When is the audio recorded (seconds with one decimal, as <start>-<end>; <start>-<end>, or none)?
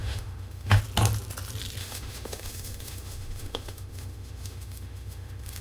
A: 0.8-1.8